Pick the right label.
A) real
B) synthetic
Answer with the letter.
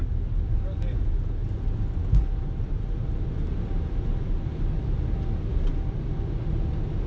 A